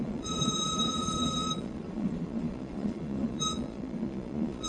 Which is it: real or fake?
fake